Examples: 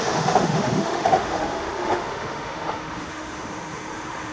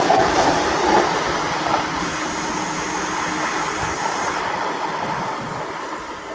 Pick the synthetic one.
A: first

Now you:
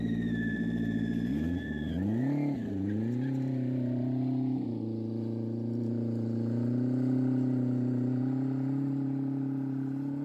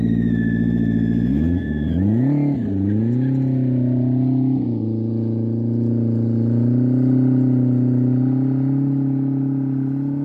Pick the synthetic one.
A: first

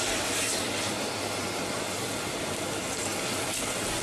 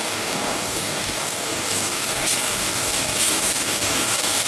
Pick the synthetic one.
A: second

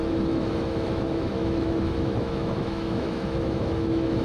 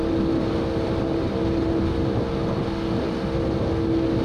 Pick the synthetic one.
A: first